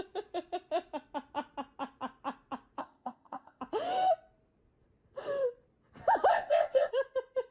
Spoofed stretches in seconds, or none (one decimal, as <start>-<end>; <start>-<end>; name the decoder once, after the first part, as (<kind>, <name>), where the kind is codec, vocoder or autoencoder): 2.8-3.6 (codec, ZipCodec); 6.3-6.9